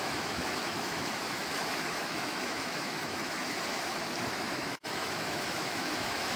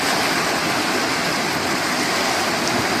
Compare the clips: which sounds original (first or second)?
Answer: second